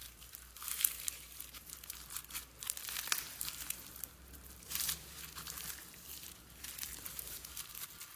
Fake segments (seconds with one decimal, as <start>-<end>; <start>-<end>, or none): 0.0-2.2; 3.3-7.5